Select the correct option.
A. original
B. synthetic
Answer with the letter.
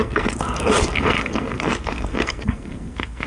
B